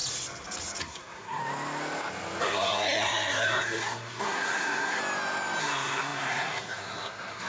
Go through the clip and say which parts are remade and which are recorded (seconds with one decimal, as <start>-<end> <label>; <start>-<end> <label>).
0.0-0.8 recorded; 0.8-1.4 remade; 1.4-2.4 recorded; 2.4-5.0 remade; 5.0-5.6 recorded; 5.6-7.5 remade